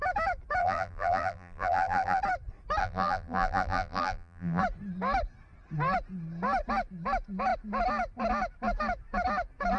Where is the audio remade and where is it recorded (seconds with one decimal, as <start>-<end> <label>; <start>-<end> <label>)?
0.0-0.6 recorded; 0.6-2.2 remade; 2.2-2.8 recorded; 2.8-4.6 remade; 4.6-9.8 recorded